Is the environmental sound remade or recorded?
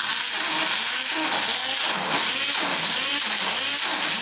recorded